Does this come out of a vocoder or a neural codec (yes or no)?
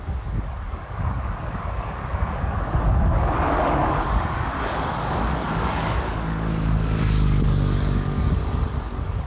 yes